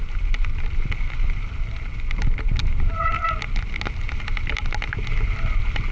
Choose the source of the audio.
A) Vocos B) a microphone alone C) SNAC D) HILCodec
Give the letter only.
B